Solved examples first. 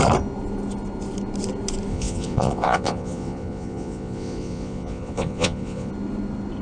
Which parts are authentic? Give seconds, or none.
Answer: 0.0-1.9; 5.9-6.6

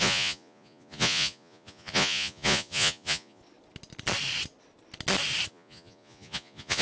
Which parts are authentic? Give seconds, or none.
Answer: 3.4-5.5